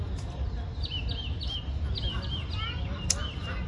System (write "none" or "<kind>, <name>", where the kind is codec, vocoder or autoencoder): none